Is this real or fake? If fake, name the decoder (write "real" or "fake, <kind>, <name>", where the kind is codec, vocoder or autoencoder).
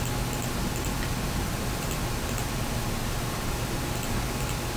real